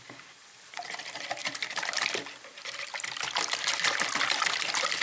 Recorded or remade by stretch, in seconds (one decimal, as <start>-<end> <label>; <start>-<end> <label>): 0.0-5.0 recorded